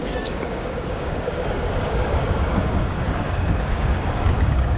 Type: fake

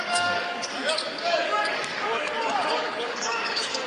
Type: fake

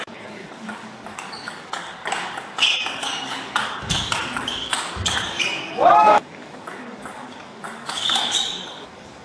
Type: fake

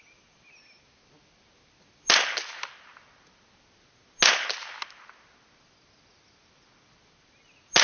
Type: real